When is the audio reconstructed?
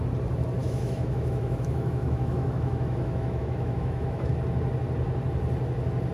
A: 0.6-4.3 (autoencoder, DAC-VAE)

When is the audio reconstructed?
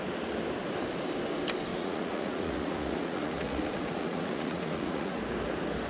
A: 1.7-5.2 (vocoder, Vocos)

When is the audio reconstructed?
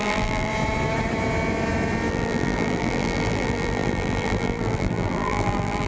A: 0.0-0.5 (vocoder, BigVGAN v2); 2.1-5.9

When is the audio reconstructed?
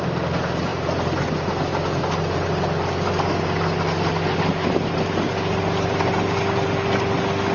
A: none